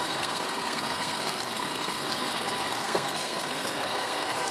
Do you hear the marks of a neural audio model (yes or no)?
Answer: yes